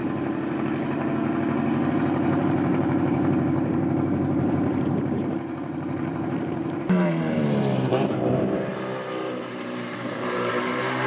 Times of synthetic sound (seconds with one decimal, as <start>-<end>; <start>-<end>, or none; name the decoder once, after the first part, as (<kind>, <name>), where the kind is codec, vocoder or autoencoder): 1.9-8.7 (vocoder, BigVGAN v2); 9.3-11.1

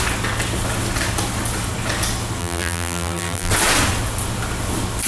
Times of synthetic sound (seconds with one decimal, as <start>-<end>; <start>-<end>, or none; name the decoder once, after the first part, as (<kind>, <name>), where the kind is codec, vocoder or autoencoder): 2.4-3.5 (vocoder, BigVGAN v2)

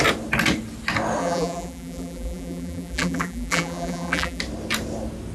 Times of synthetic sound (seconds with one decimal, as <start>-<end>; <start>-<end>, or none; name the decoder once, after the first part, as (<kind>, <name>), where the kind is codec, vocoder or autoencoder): 1.2-4.4 (vocoder, BigVGAN v2)

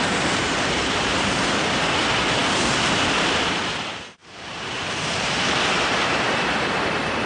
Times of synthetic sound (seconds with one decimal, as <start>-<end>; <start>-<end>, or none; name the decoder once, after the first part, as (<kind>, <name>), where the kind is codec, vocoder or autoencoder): 0.0-7.3 (vocoder, BigVGAN v2)

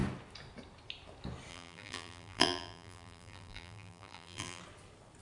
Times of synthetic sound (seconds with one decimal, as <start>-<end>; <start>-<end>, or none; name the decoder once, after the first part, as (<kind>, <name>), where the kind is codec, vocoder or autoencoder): 1.5-4.6 (vocoder, BigVGAN v2)